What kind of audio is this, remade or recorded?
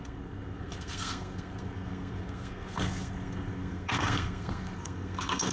remade